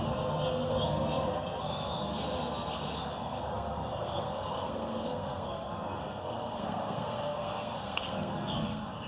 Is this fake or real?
fake